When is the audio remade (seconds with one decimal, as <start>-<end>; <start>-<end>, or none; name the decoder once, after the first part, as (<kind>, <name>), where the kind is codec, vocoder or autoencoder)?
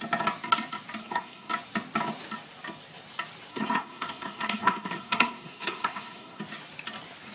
1.0-1.5 (codec, SNAC); 3.5-6.4